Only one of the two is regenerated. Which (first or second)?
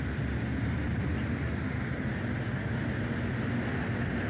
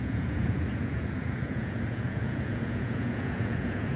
second